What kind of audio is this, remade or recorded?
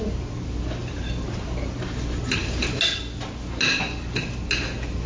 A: recorded